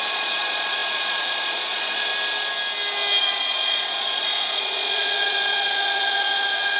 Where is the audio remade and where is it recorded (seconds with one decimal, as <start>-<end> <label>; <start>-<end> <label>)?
0.0-2.1 remade; 2.1-3.2 recorded; 3.2-6.8 remade